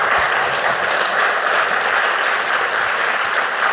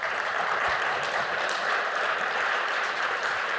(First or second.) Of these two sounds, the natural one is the first